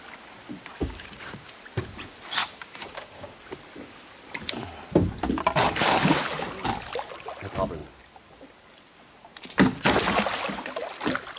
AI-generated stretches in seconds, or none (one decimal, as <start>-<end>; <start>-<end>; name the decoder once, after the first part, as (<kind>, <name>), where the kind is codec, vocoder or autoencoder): 0.8-1.5 (codec, DAC); 2.4-3.4